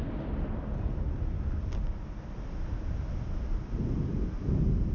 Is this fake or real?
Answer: real